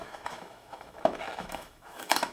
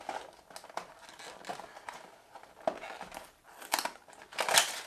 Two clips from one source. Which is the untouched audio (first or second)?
second